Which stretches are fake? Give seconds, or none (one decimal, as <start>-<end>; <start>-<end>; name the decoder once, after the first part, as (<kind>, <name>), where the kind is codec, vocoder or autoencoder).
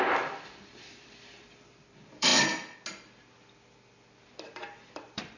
0.0-2.3 (vocoder, BigVGAN v2); 4.4-5.4